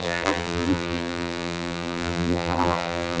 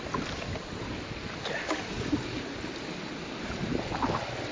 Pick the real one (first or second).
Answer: second